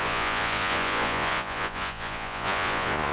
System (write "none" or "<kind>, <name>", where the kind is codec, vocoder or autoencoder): vocoder, Vocos